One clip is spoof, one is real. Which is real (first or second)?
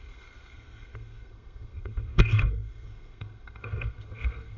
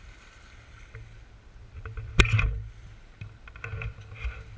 second